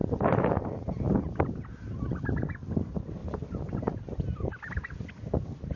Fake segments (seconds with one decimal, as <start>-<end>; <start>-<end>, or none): 0.0-1.7